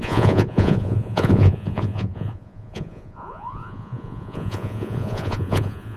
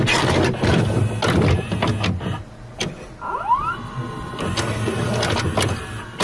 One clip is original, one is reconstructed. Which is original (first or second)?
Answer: second